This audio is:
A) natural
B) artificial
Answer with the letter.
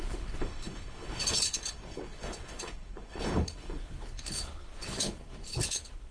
B